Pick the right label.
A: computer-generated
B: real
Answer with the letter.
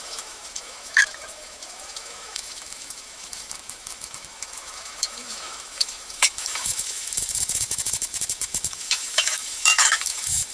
A